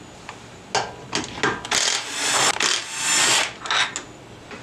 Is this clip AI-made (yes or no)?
no